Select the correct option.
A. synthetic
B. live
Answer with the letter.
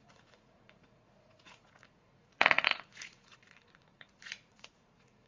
A